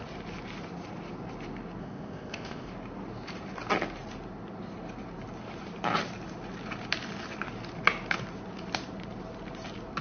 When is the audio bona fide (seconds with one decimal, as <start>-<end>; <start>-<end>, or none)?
0.0-1.8; 2.7-10.0